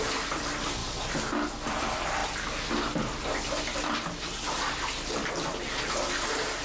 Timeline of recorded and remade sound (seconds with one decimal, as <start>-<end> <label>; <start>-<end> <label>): 0.0-0.8 remade; 0.8-1.7 recorded; 1.7-6.6 remade